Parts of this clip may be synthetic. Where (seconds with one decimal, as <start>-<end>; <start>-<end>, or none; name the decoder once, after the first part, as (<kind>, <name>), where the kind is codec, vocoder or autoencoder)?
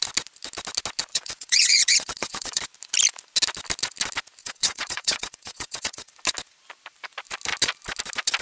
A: 1.1-2.6 (vocoder, WaveNeXt); 4.4-6.1